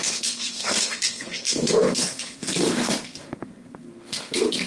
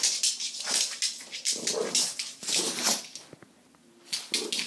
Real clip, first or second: second